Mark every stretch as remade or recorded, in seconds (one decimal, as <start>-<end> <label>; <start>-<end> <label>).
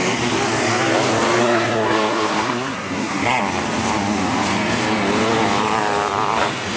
0.0-1.4 recorded; 1.4-3.4 remade; 3.4-6.8 recorded